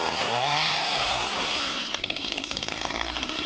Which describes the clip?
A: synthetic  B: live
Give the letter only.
A